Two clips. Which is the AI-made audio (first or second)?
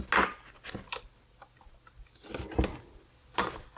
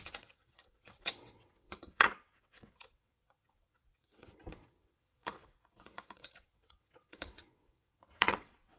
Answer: second